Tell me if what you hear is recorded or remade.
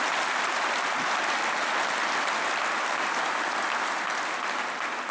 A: recorded